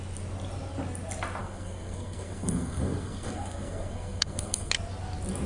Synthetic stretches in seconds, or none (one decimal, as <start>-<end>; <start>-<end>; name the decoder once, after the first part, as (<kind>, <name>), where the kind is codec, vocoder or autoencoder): 1.4-4.7 (codec, SNAC)